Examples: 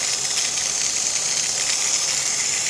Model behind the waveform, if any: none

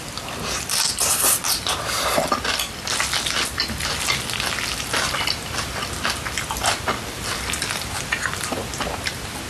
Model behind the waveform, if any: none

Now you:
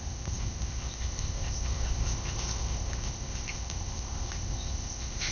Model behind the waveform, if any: codec, ZipCodec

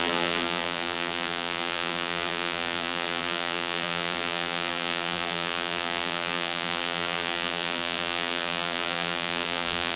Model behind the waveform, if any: vocoder, BigVGAN v2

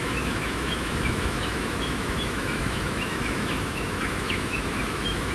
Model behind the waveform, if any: autoencoder, DAC-VAE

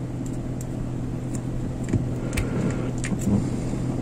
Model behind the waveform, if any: none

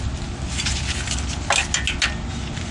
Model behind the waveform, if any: none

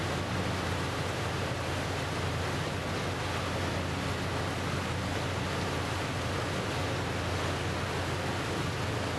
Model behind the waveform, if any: none